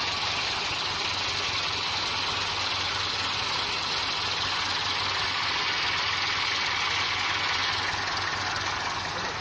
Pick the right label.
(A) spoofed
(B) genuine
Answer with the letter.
B